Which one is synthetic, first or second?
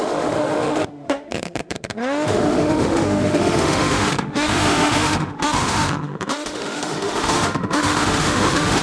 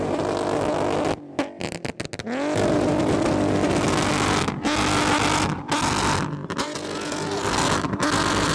first